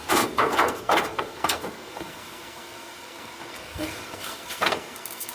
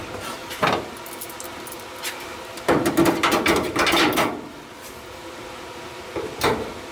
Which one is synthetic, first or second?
first